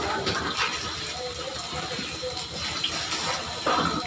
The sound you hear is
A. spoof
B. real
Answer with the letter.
B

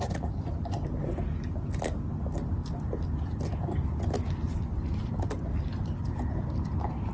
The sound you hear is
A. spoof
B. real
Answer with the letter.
B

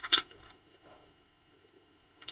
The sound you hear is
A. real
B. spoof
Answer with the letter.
B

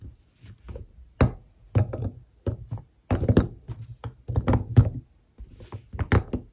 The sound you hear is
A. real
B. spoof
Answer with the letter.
A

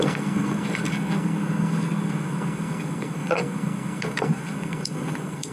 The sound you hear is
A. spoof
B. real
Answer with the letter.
A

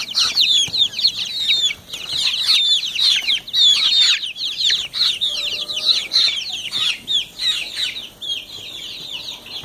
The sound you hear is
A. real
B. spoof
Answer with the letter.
A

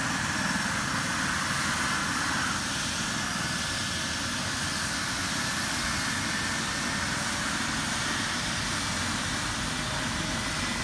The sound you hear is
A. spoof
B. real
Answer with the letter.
B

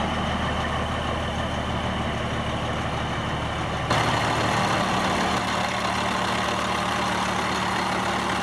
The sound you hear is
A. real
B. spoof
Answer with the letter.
A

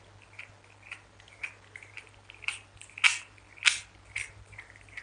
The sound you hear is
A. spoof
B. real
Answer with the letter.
B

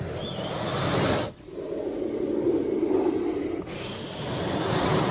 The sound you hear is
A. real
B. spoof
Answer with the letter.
A